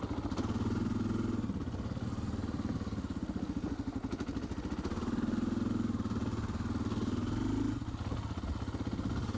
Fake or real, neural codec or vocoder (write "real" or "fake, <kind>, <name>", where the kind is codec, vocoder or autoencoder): real